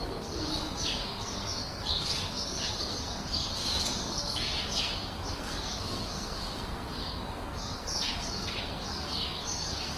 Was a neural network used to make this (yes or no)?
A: yes